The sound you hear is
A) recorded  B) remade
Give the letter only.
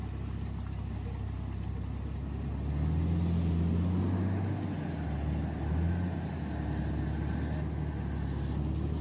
A